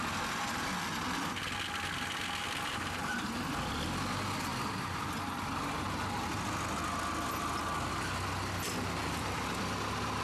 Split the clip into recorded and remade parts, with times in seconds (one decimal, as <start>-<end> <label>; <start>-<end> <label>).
0.0-9.0 recorded; 9.0-9.6 remade; 9.6-10.2 recorded